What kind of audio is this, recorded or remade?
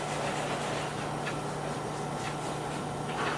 recorded